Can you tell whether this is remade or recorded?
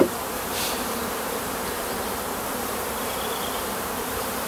remade